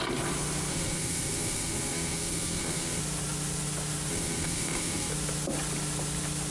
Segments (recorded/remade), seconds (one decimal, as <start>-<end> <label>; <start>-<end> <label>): 0.0-0.7 recorded; 0.7-3.0 remade; 3.0-4.1 recorded; 4.1-5.1 remade; 5.1-6.5 recorded